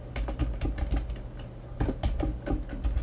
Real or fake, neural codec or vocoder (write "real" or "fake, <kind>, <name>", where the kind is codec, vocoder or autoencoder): real